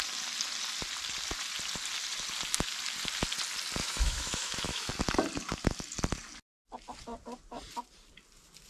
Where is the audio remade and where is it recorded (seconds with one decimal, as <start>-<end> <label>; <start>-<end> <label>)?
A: 0.0-3.8 recorded; 3.8-4.9 remade; 4.9-8.7 recorded